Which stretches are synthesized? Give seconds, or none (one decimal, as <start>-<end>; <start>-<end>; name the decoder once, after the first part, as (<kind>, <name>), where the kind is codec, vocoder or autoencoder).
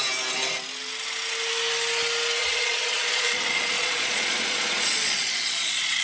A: 2.4-6.0 (vocoder, Vocos)